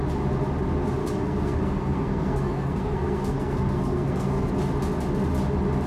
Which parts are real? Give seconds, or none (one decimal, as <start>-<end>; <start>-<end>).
0.0-1.0; 4.5-5.9